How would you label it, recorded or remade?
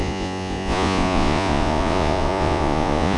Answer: remade